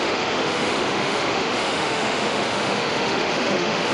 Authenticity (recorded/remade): remade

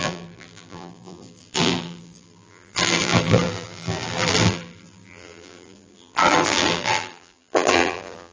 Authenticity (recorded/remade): remade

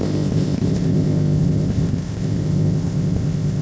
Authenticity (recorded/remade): remade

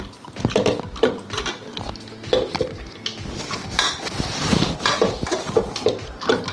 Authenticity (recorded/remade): recorded